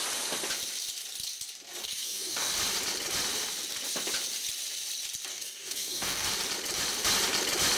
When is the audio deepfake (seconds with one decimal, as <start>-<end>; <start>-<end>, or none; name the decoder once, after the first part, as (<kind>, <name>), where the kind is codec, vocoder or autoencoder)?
1.8-2.5 (codec, DAC); 5.3-6.3